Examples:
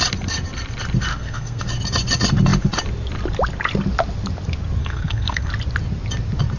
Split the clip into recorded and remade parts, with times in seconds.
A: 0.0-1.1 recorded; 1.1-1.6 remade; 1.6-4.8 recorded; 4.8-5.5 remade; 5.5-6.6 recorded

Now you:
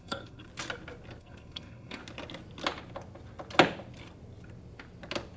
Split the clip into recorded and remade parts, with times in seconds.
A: 0.0-0.5 remade; 0.5-1.2 recorded; 1.2-2.0 remade; 2.0-5.4 recorded

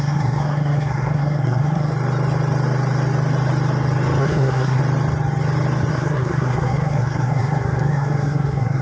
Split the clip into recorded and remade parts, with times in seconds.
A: 0.0-1.9 remade; 1.9-4.2 recorded; 4.2-4.8 remade; 4.8-5.9 recorded; 5.9-8.8 remade